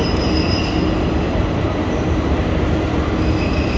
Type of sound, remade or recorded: recorded